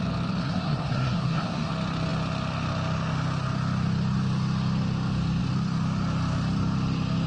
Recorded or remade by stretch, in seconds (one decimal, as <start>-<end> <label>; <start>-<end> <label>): 0.0-0.4 recorded; 0.4-1.7 remade; 1.7-7.3 recorded